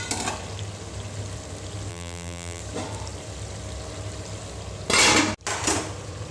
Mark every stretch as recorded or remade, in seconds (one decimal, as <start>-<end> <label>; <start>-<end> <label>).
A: 0.0-1.9 recorded; 1.9-2.6 remade; 2.6-6.3 recorded